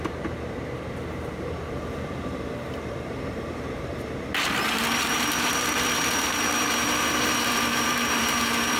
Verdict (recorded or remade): remade